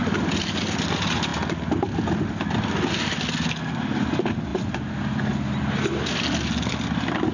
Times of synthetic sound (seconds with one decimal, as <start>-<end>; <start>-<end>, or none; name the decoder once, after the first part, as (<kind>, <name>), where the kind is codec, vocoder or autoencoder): 0.0-0.6 (vocoder, BigVGAN v2); 4.5-5.0